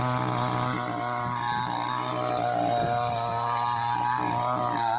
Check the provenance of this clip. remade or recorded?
recorded